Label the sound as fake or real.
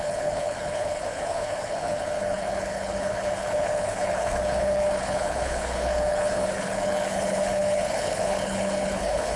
fake